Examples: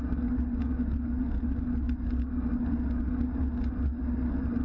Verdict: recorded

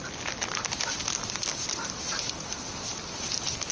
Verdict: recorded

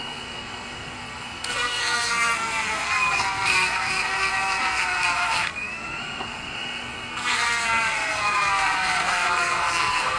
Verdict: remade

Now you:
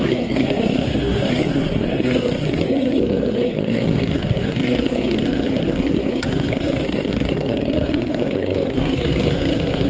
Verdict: remade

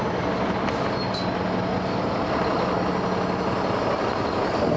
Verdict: recorded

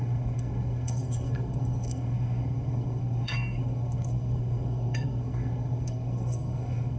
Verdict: remade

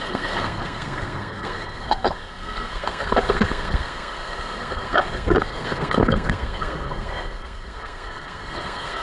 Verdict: remade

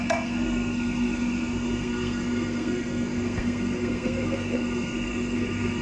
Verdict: remade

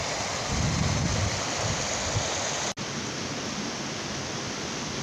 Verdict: recorded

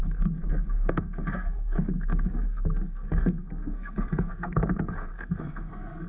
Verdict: remade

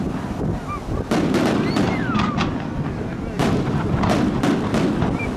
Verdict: recorded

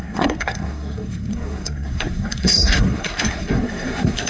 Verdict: remade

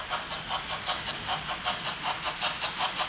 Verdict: recorded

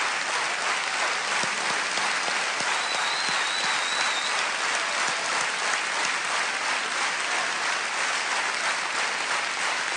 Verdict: recorded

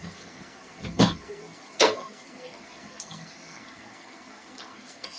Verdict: remade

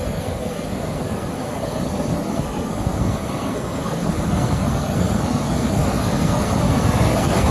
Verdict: remade